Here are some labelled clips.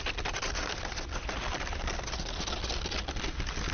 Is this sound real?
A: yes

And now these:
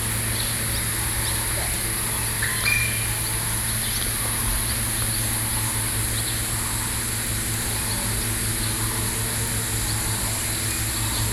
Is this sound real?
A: yes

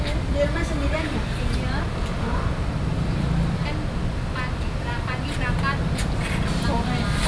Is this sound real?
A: yes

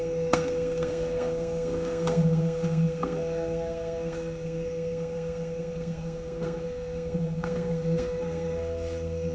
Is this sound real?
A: no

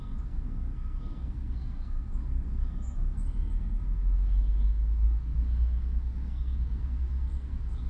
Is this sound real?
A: no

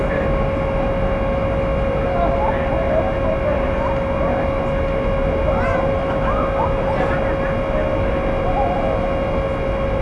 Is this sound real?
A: yes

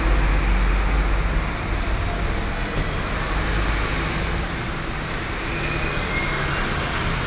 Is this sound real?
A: yes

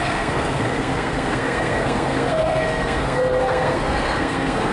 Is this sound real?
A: no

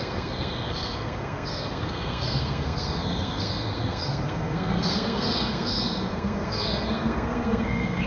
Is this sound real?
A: no